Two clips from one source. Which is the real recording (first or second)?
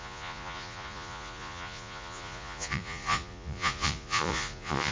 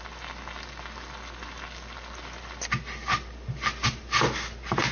second